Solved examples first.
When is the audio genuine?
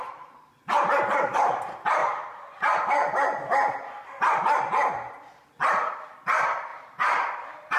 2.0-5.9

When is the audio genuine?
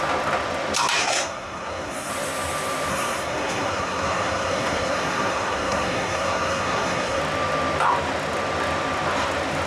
0.0-1.0; 2.1-2.9; 7.2-9.7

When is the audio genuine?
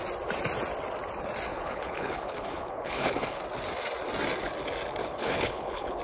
0.0-1.5; 3.4-5.0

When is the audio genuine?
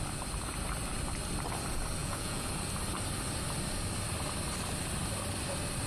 0.0-2.0; 2.5-5.9